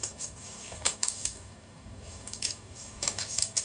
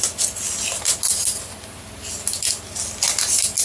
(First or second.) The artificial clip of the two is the first